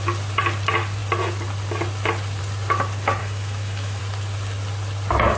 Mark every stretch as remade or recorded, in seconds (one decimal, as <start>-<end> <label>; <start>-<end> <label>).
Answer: 0.0-3.2 recorded; 3.2-4.0 remade; 4.0-5.4 recorded